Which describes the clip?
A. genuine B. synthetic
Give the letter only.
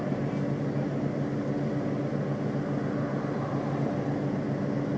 A